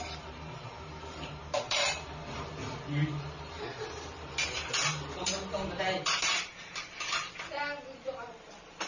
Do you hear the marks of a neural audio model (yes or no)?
yes